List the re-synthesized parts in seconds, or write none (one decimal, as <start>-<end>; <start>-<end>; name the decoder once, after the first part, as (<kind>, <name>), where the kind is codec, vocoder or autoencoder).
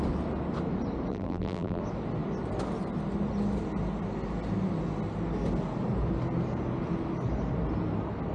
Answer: 1.1-1.8 (vocoder, BigVGAN v2)